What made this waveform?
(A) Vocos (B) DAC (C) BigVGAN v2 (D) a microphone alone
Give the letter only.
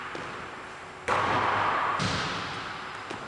D